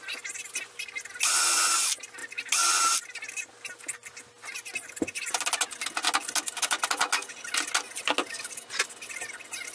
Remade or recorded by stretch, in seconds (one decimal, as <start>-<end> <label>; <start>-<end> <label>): 0.0-9.7 recorded